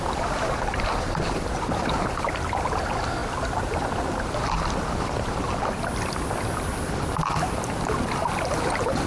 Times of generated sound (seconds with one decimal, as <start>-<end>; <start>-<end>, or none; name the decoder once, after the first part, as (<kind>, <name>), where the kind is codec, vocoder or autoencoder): none